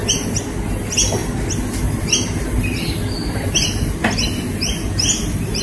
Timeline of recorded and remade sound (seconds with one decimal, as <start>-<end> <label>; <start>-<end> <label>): 0.0-1.2 recorded; 1.2-4.6 remade; 4.6-5.6 recorded